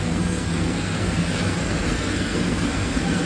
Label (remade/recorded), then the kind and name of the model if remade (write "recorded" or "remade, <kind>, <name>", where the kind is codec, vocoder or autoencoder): remade, codec, SNAC